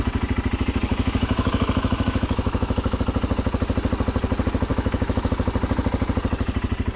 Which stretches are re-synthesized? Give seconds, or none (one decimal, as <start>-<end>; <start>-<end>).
0.9-3.0; 4.7-5.3